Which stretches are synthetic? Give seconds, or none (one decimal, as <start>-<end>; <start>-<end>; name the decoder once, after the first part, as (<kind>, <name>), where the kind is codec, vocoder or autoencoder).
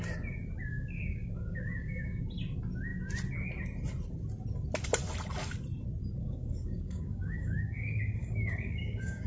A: 0.7-2.2 (codec, DAC); 6.2-9.3